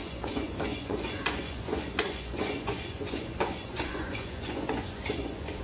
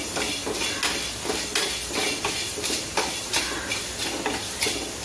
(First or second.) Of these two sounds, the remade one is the first